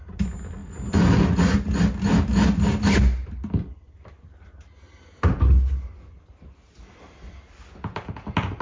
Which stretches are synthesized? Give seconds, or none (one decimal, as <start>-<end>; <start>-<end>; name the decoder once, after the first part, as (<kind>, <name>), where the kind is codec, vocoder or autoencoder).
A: none